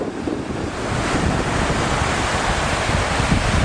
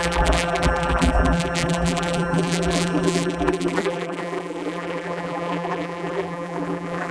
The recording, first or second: first